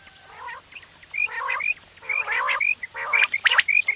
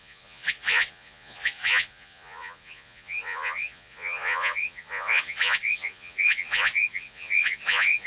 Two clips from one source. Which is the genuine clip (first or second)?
first